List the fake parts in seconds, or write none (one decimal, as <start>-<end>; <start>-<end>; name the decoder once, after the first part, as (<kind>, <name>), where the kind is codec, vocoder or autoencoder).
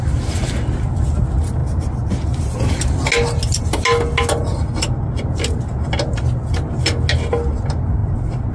none